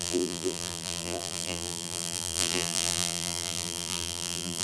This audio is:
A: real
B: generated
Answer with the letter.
B